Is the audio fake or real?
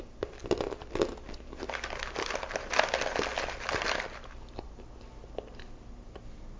real